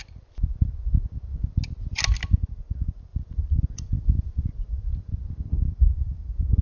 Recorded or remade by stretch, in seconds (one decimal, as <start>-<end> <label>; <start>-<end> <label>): 0.0-3.1 recorded; 3.1-5.1 remade; 5.1-5.9 recorded; 5.9-6.6 remade